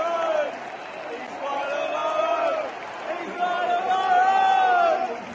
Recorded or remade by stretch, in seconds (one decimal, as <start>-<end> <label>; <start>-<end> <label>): 0.0-5.3 recorded